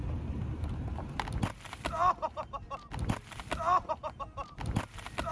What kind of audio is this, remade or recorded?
recorded